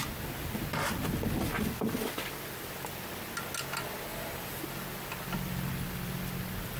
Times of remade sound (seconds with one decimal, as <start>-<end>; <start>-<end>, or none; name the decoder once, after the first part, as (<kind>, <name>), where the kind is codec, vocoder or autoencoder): 4.1-4.6 (vocoder, BigVGAN v2)